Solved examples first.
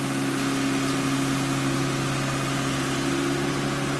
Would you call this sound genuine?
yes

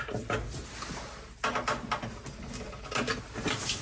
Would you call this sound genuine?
yes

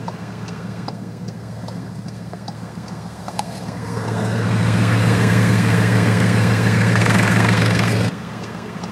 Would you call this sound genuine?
no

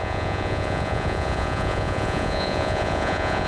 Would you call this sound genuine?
no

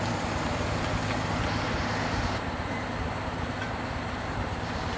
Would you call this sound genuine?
no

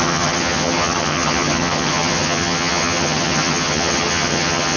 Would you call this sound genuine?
no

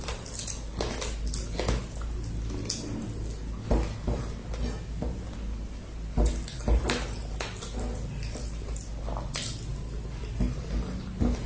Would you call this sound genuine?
yes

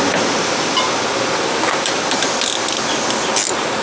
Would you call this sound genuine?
yes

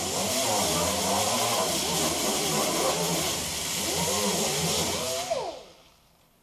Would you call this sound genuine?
yes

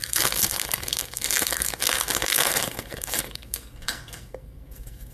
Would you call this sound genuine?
no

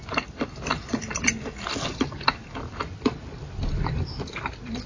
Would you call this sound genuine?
yes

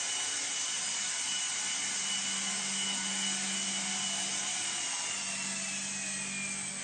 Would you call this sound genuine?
yes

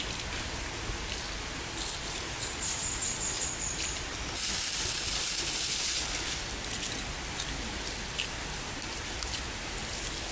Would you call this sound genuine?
yes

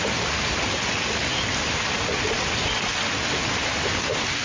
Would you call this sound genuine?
yes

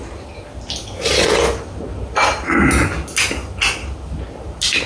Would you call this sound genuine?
yes